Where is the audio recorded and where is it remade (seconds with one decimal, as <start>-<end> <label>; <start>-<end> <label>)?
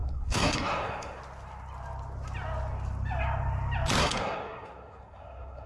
0.0-1.2 remade; 1.2-4.0 recorded; 4.0-5.7 remade